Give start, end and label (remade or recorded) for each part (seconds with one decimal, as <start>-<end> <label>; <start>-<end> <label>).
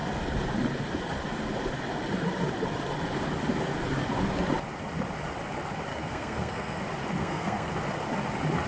0.0-5.9 recorded; 5.9-6.8 remade; 6.8-7.2 recorded; 7.2-7.7 remade; 7.7-8.7 recorded